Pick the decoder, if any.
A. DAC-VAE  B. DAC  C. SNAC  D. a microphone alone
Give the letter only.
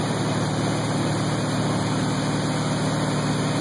D